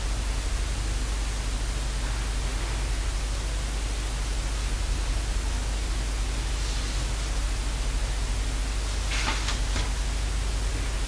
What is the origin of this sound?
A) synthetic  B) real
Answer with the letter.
B